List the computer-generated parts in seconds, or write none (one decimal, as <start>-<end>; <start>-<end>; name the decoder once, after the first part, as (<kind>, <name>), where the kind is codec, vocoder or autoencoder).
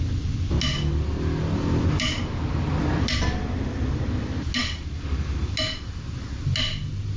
none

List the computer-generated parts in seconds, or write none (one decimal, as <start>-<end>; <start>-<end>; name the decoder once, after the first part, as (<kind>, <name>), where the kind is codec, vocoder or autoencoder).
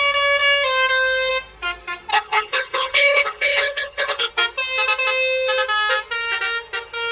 2.1-4.3 (codec, HILCodec)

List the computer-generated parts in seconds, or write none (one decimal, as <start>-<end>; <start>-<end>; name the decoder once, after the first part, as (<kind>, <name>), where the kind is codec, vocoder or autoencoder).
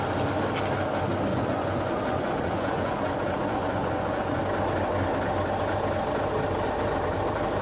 1.3-4.4 (vocoder, Vocos)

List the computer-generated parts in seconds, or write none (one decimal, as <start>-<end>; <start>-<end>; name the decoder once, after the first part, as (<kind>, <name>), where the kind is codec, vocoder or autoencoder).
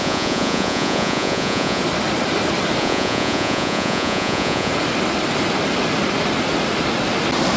0.0-1.8 (vocoder, Vocos); 2.8-4.7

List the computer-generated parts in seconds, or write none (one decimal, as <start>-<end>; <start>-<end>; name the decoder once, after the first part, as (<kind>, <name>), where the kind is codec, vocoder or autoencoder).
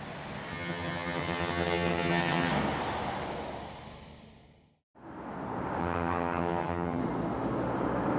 0.5-2.5 (vocoder, HiFi-GAN); 5.8-7.0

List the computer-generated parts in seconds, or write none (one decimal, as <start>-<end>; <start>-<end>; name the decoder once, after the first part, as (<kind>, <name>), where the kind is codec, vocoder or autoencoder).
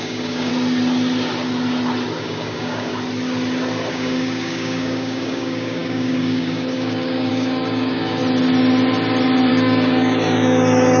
0.0-0.5 (codec, DAC); 2.2-2.9; 3.9-8.2; 9.5-11.0